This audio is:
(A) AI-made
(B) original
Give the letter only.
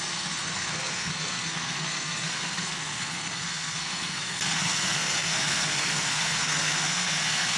A